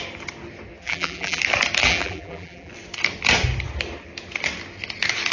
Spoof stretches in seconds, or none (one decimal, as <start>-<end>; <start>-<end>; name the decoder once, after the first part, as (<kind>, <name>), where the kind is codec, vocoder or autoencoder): 0.8-1.4 (vocoder, BigVGAN v2); 1.8-2.7